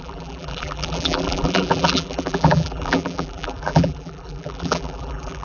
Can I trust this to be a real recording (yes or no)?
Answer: no